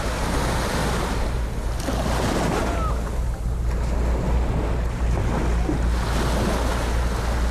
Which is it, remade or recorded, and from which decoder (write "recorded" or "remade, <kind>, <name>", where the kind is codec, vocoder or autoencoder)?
recorded